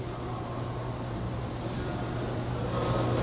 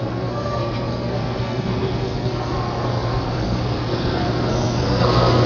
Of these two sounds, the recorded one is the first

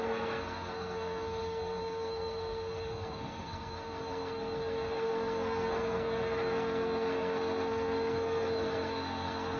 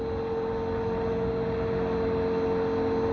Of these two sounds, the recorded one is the second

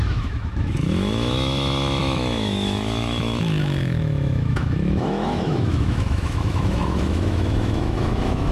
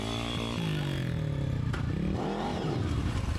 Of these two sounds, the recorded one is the second